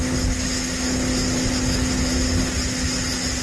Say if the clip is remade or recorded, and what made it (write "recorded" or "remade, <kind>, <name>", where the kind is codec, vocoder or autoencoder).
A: recorded